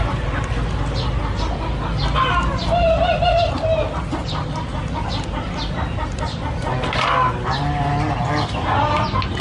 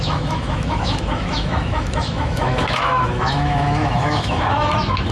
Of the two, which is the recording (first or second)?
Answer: first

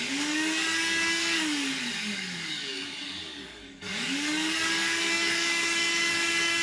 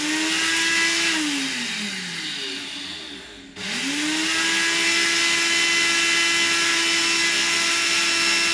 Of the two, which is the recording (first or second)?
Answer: second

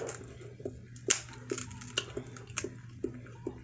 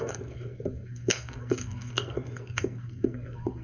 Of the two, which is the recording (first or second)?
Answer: first